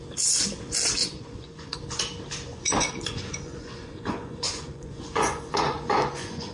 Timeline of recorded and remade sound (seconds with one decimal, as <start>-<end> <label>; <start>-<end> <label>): 0.0-1.0 recorded; 1.0-1.8 remade; 1.8-2.5 recorded; 2.5-6.5 remade